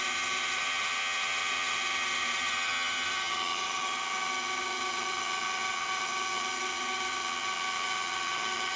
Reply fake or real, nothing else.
fake